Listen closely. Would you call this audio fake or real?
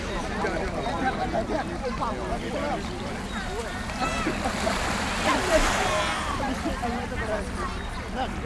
real